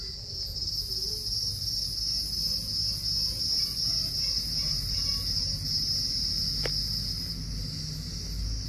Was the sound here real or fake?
real